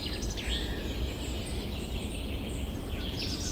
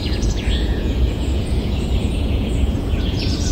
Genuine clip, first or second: first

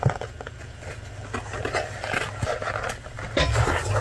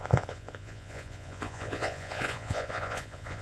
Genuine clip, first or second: first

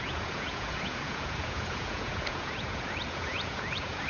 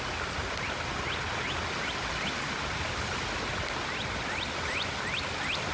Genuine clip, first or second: second